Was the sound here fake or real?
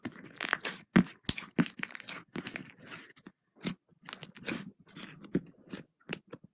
real